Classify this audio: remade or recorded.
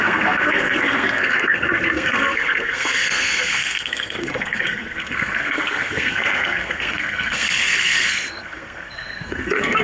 remade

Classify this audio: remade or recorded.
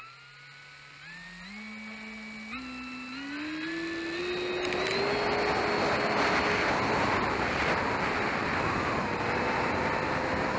recorded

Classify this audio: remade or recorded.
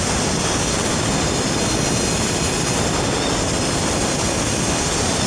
recorded